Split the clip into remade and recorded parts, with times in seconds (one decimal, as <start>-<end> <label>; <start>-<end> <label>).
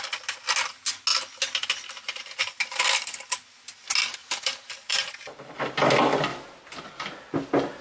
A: 0.0-4.2 recorded; 4.2-5.5 remade; 5.5-7.8 recorded